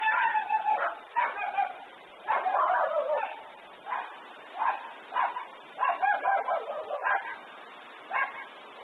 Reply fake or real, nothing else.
real